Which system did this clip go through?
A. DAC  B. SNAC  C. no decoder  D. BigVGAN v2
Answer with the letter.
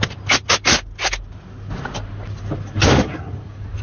C